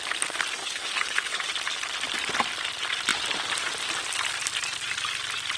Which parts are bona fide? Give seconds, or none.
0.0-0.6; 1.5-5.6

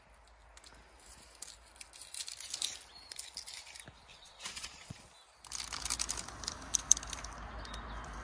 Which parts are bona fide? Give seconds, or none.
0.0-4.1; 5.0-8.2

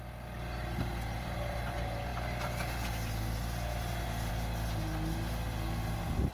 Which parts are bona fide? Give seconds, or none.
0.0-6.3